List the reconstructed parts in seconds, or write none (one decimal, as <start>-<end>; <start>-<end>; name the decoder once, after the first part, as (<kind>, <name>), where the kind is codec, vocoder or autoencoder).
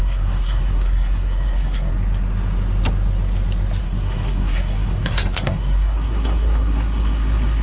0.0-1.9 (codec, SNAC); 3.8-7.6